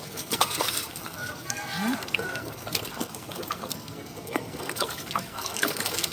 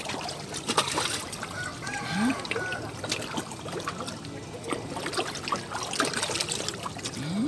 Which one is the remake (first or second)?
first